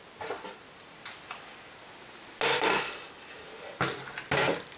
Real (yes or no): yes